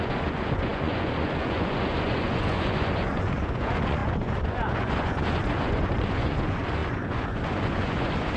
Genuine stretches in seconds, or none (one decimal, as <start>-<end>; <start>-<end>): none